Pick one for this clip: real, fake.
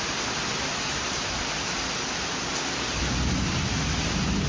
real